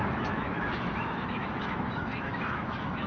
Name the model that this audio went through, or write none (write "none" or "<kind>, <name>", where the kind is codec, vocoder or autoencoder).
autoencoder, DAC-VAE